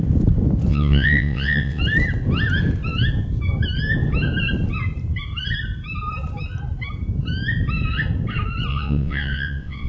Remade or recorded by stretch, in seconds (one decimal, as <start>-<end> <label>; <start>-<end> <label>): 0.0-0.7 recorded; 0.7-1.8 remade; 1.8-8.7 recorded; 8.7-9.9 remade